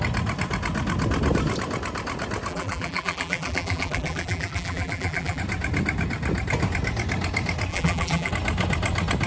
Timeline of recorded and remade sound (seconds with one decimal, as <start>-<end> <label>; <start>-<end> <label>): 0.0-2.5 recorded; 2.5-5.4 remade; 5.4-7.7 recorded; 7.7-8.3 remade; 8.3-9.3 recorded